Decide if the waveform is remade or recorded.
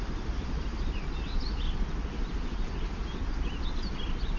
recorded